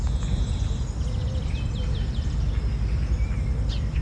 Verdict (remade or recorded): recorded